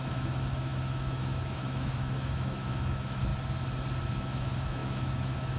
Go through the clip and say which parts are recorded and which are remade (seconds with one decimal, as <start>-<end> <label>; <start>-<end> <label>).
0.0-3.3 remade; 3.3-4.1 recorded; 4.1-5.6 remade